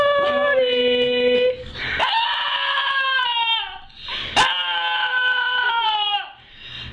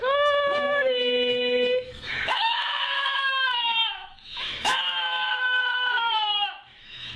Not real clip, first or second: second